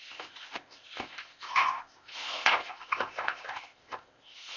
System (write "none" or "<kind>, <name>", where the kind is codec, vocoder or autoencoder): codec, ZipCodec